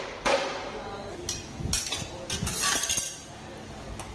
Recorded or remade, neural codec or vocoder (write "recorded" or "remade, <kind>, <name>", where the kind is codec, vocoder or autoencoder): recorded